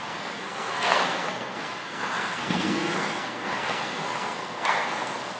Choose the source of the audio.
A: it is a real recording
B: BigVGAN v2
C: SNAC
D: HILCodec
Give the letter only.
C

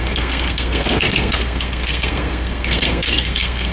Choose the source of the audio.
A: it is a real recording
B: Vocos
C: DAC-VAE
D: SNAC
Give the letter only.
D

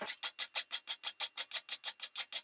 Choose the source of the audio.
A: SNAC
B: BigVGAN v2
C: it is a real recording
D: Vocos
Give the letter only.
C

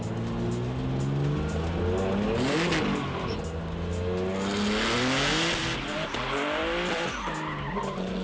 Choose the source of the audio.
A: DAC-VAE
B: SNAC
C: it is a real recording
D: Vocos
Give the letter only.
C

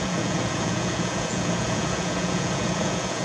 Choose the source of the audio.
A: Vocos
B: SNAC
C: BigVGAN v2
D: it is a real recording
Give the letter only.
A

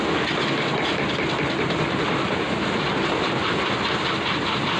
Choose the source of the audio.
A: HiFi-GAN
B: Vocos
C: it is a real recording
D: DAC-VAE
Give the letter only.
C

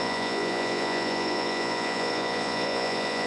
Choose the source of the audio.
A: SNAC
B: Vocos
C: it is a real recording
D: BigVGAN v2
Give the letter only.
B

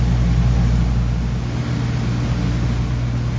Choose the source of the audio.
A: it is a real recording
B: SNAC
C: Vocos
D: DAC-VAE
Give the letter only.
A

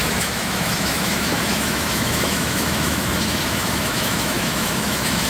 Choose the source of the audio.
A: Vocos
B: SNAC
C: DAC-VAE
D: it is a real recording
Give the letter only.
C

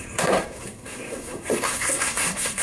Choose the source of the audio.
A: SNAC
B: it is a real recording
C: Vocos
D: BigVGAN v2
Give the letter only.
A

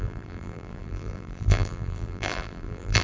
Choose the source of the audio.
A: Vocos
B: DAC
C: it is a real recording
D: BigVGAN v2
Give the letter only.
D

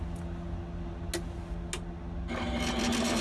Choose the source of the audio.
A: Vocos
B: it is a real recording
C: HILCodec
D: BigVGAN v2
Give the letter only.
B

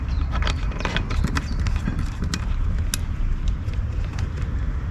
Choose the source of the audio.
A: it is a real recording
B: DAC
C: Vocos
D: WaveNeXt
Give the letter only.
A